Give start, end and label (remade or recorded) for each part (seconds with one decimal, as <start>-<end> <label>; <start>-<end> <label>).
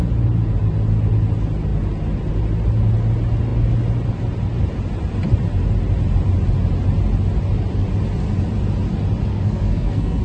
0.0-9.3 recorded; 9.3-10.2 remade